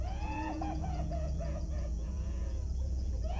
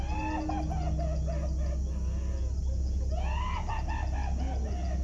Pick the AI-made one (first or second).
first